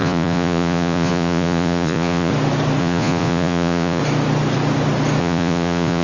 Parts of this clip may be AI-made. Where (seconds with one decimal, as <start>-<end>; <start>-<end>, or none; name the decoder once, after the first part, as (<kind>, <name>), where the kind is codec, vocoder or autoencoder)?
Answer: 0.0-2.3 (vocoder, Vocos); 2.8-4.0; 5.2-6.0